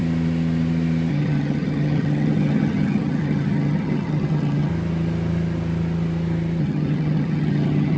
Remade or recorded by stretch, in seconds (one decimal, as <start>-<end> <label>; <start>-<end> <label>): 0.0-1.1 recorded; 1.1-4.7 remade; 4.7-6.6 recorded; 6.6-8.0 remade